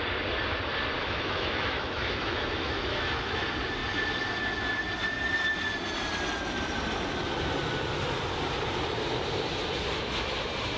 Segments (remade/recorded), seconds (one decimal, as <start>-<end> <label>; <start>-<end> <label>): 0.0-1.0 recorded; 1.0-3.4 remade; 3.4-10.8 recorded